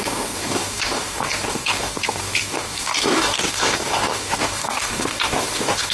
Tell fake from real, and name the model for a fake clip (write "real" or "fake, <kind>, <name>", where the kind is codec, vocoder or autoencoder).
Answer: fake, codec, DAC